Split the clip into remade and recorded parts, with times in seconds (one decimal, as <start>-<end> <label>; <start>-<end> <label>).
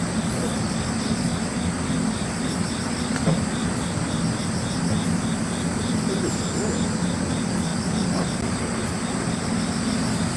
0.0-7.7 recorded; 7.7-8.8 remade; 8.8-10.4 recorded